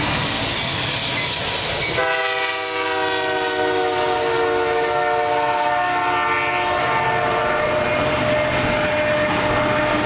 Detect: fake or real real